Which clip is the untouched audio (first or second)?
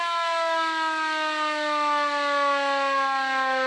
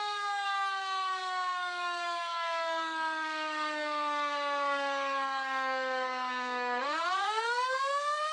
first